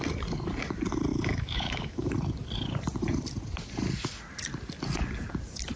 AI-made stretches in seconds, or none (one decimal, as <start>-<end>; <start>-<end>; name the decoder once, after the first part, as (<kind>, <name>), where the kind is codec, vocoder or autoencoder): 1.1-2.1 (autoencoder, DAC-VAE)